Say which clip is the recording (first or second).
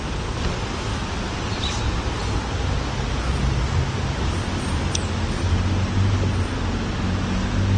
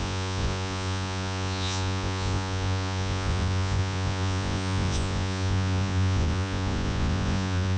first